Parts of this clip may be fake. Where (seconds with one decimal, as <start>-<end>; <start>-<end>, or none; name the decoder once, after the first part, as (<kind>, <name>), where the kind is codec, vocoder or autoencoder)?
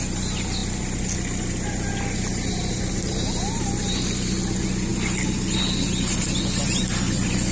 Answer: 2.5-3.6 (vocoder, BigVGAN v2)